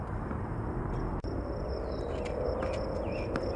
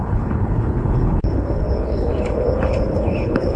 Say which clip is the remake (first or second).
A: second